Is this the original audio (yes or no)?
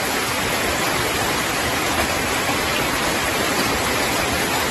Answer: no